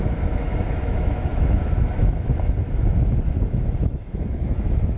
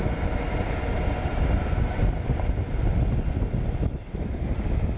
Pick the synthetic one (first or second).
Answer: first